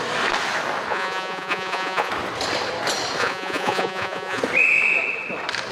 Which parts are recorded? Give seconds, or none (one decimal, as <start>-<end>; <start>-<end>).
0.0-0.9; 2.1-3.2; 4.4-5.7